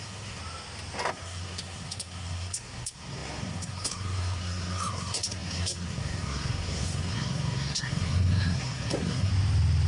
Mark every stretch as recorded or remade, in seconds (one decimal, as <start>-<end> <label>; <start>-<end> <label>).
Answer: 0.0-0.4 remade; 0.4-1.1 recorded; 1.1-9.3 remade; 9.3-9.9 recorded